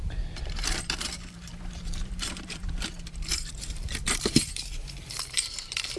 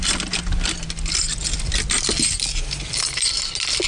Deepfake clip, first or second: first